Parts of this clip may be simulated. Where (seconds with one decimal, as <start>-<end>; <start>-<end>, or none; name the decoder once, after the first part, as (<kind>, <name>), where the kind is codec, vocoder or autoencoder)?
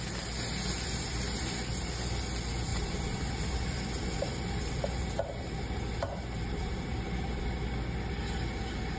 2.7-7.4 (vocoder, BigVGAN v2)